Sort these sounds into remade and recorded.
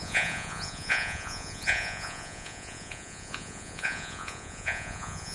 remade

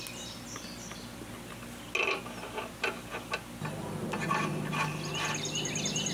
recorded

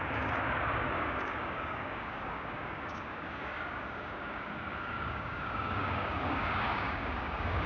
remade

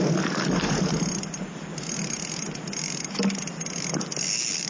recorded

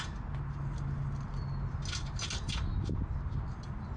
recorded